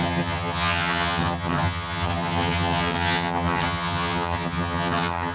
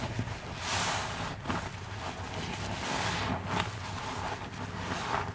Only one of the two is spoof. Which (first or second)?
first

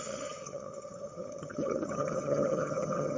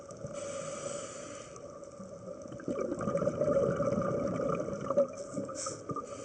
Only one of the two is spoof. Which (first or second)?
first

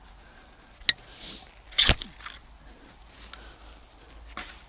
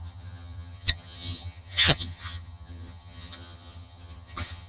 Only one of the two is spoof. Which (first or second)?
second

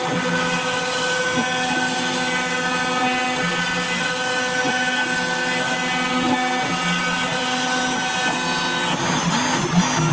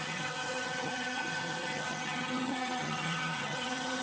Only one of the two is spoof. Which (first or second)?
second